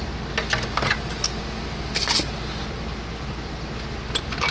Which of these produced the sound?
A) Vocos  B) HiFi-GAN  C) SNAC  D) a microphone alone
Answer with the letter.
D